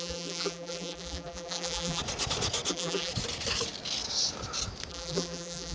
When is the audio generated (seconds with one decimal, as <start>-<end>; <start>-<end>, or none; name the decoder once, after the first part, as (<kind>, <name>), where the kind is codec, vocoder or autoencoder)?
0.0-2.0 (vocoder, BigVGAN v2); 2.7-3.1; 4.9-5.7